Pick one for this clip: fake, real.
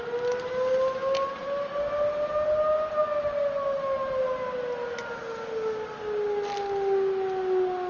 real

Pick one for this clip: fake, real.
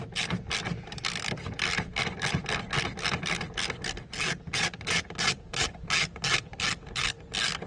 real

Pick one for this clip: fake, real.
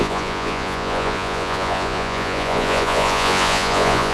fake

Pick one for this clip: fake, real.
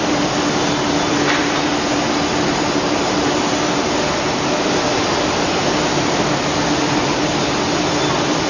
real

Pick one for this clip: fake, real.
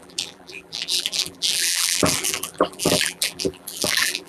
fake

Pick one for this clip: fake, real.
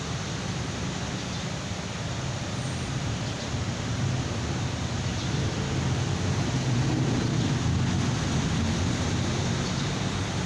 real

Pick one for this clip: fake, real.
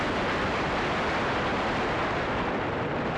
real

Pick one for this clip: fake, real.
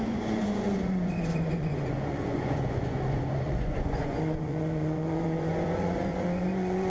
fake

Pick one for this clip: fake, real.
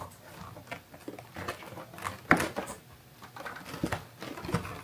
real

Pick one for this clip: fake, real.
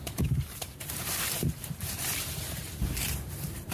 fake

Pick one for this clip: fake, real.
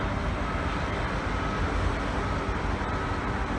real